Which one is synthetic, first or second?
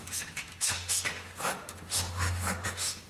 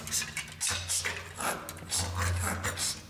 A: first